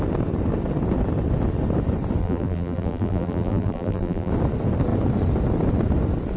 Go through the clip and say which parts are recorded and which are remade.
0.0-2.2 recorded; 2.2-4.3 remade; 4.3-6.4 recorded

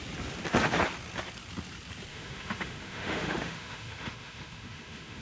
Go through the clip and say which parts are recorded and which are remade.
0.0-2.1 recorded; 2.1-5.2 remade